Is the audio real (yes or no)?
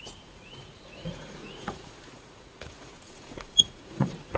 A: no